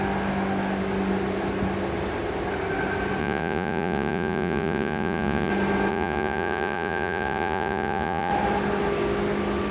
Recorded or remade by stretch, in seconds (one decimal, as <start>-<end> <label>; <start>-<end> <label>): 0.0-3.2 recorded; 3.2-5.5 remade; 5.5-5.9 recorded; 5.9-8.3 remade; 8.3-9.7 recorded